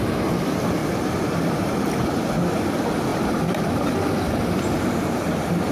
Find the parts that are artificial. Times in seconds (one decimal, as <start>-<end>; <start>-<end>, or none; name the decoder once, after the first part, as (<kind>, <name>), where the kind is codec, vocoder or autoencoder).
0.8-1.7 (vocoder, BigVGAN v2); 3.1-5.7